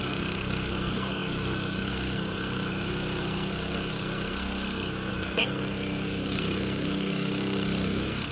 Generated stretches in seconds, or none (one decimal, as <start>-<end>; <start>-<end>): 0.0-8.3